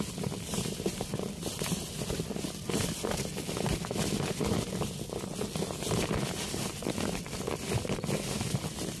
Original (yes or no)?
yes